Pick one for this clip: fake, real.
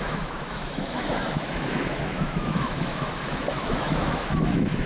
fake